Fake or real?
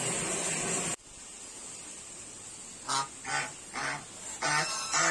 real